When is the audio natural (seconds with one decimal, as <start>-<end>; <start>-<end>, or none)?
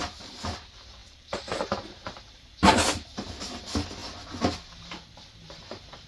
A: 4.0-4.6